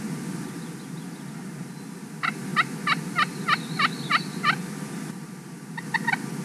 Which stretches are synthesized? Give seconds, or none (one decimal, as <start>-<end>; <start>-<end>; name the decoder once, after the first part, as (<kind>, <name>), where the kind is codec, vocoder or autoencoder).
none